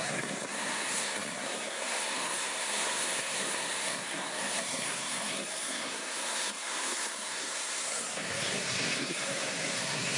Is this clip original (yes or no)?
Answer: no